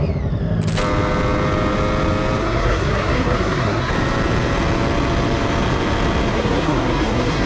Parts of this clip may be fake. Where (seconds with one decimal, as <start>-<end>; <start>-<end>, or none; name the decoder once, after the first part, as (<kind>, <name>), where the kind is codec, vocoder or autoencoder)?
2.4-3.9 (codec, SNAC); 6.3-7.5